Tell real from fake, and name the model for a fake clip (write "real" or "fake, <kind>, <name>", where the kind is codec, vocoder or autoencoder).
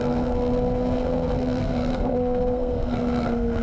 fake, codec, SNAC